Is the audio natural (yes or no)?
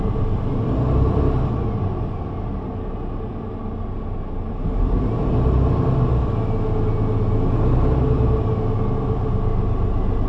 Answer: yes